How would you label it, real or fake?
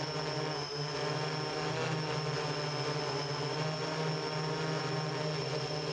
real